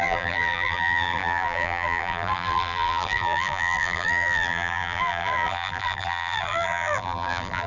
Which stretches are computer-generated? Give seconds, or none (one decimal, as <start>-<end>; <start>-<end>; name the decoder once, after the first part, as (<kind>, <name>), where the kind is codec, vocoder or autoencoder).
0.0-7.7 (vocoder, BigVGAN v2)